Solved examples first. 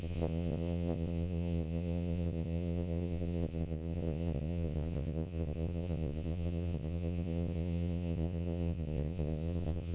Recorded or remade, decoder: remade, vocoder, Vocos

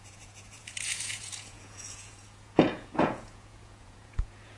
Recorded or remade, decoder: remade, vocoder, Vocos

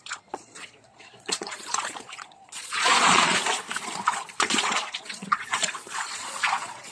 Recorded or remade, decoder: remade, vocoder, Vocos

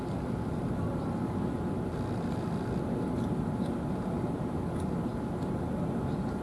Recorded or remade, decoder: recorded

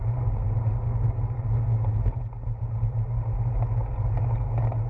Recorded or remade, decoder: recorded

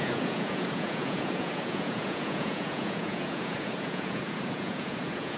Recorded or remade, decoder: remade, vocoder, Vocos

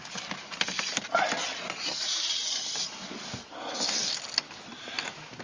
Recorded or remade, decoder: recorded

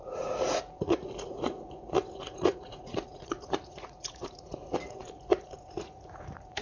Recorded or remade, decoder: remade, vocoder, Vocos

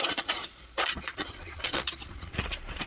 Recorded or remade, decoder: remade, vocoder, Vocos